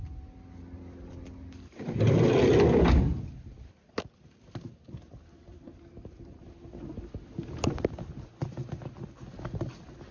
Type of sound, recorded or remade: recorded